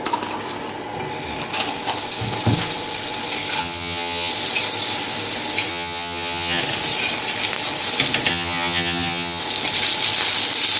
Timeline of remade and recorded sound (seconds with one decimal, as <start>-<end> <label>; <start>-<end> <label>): 0.0-3.6 recorded; 3.6-4.3 remade; 4.3-5.7 recorded; 5.7-6.6 remade; 6.6-8.3 recorded; 8.3-9.4 remade; 9.4-10.8 recorded